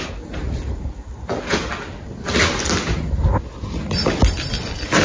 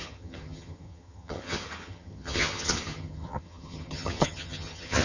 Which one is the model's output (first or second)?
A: second